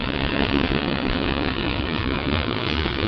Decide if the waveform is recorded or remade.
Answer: remade